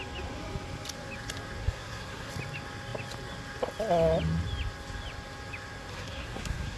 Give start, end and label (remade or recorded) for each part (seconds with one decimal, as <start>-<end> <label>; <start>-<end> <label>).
0.0-1.6 recorded; 1.6-2.3 remade; 2.3-5.9 recorded; 5.9-6.8 remade